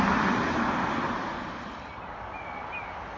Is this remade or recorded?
recorded